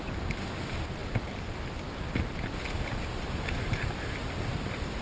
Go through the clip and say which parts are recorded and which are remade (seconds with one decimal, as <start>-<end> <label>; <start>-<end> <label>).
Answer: 0.0-5.0 recorded